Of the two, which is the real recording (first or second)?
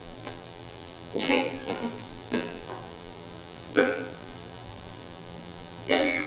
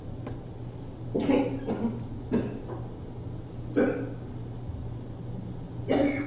second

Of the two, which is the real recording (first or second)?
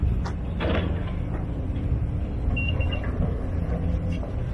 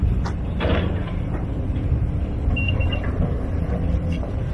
first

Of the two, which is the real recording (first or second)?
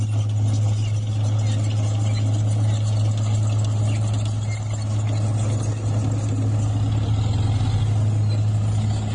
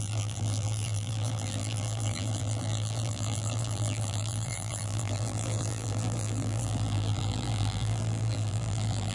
first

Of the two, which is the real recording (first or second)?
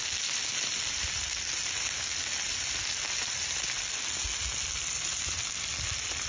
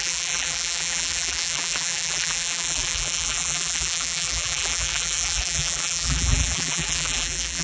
first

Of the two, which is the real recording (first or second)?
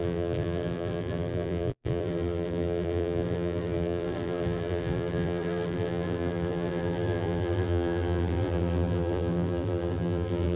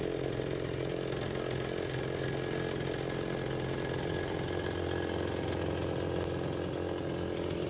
second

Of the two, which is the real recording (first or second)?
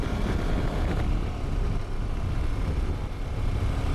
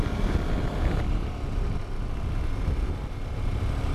second